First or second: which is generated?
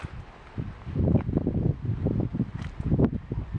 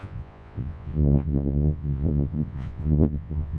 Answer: second